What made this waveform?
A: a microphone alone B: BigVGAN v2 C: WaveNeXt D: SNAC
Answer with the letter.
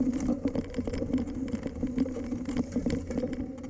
A